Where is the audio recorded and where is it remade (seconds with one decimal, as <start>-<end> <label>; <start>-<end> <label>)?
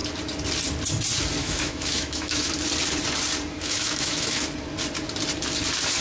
0.0-1.4 recorded; 1.4-2.5 remade; 2.5-3.6 recorded; 3.6-4.4 remade; 4.4-6.0 recorded